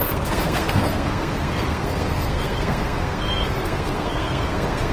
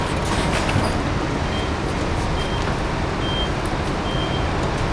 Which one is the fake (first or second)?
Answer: first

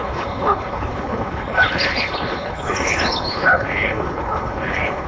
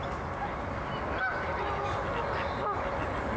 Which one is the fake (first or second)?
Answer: first